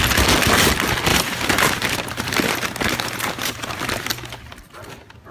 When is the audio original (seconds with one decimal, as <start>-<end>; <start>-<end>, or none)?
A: 0.0-1.1; 3.8-5.3